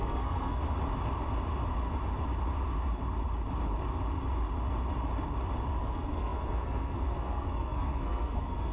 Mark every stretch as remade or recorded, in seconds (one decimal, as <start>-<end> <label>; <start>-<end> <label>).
0.0-0.6 remade; 0.6-5.8 recorded; 5.8-8.7 remade